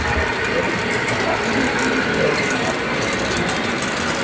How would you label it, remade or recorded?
recorded